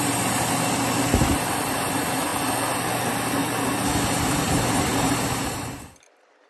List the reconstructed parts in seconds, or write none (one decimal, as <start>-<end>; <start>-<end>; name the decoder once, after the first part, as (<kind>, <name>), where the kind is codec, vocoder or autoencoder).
0.0-2.3 (vocoder, BigVGAN v2); 4.2-4.9; 5.7-6.5